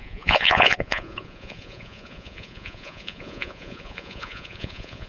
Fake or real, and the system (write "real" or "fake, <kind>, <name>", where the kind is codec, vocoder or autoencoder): fake, vocoder, Vocos